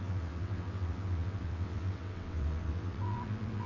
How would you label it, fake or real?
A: fake